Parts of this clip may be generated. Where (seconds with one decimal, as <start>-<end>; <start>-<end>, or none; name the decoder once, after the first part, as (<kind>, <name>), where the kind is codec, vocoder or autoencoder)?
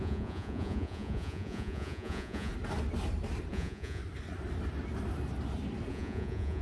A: 0.0-2.5 (vocoder, Vocos); 3.5-4.0; 5.9-6.6